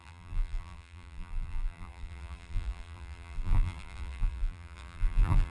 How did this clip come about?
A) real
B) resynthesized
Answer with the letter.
B